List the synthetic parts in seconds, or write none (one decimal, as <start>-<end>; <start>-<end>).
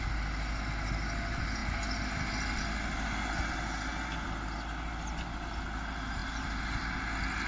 none